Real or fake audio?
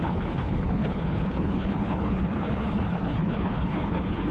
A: fake